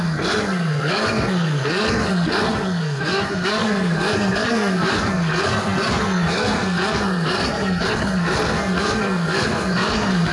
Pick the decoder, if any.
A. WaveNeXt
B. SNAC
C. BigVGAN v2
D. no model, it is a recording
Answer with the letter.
B